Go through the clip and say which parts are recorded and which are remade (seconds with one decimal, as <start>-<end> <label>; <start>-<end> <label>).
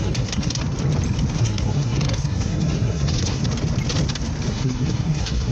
0.0-0.6 remade; 0.6-1.3 recorded; 1.3-3.4 remade; 3.4-4.5 recorded; 4.5-5.5 remade